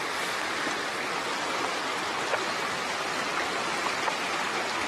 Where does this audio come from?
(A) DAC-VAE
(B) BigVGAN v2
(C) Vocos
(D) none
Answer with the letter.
D